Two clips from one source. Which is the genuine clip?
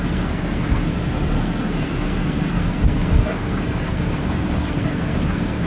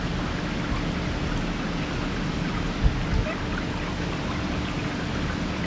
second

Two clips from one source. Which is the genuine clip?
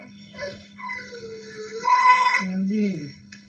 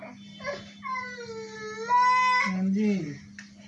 second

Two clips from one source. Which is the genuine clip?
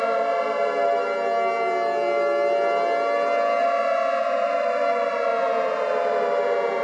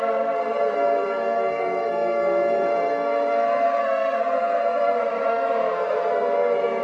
first